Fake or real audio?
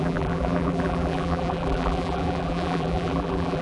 fake